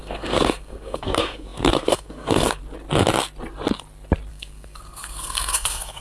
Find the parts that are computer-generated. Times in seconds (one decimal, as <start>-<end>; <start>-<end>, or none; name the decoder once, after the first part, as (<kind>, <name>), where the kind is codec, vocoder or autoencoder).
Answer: 0.0-2.6 (codec, SNAC); 4.3-6.0